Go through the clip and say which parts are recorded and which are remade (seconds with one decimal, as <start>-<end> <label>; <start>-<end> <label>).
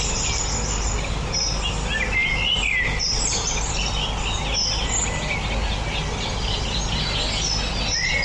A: 0.0-8.2 recorded